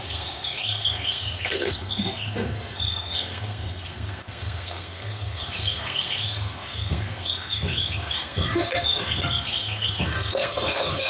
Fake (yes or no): yes